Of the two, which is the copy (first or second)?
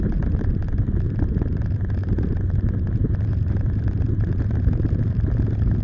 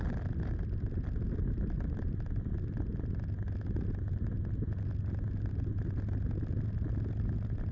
first